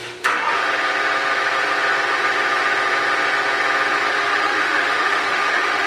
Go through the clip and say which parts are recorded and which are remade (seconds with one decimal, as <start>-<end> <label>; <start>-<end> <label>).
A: 0.0-0.6 remade; 0.6-4.1 recorded; 4.1-5.9 remade